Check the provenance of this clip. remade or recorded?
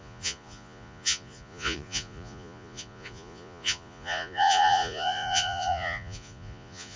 remade